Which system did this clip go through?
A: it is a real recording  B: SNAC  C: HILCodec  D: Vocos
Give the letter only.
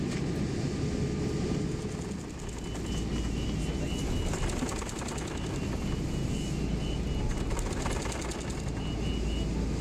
A